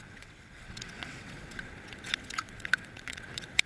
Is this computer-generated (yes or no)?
yes